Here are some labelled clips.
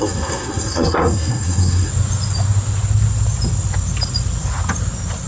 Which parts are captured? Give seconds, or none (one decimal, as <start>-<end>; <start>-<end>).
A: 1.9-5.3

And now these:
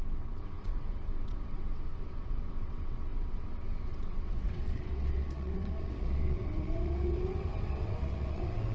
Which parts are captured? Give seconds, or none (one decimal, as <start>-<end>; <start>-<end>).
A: none

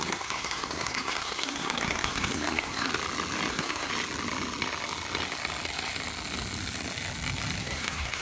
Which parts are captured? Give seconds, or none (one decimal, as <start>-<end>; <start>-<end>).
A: 2.9-3.5; 3.9-7.6

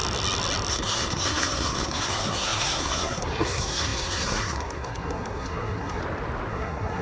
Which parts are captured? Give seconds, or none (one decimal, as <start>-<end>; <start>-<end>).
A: 0.0-0.7; 6.0-6.5

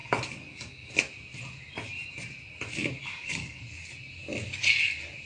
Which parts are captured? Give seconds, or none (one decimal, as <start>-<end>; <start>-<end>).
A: 0.9-3.0; 3.6-5.3

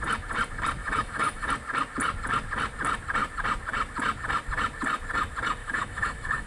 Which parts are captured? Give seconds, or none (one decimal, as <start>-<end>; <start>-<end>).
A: 0.0-0.8; 1.5-5.6

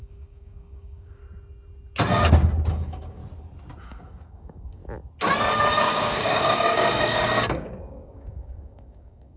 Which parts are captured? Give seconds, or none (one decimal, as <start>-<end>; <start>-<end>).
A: 1.2-2.7; 3.2-3.8; 4.8-5.7